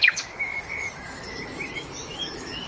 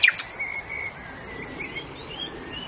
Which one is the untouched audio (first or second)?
second